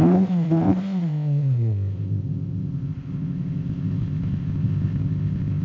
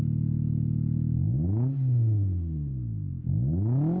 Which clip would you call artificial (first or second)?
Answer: first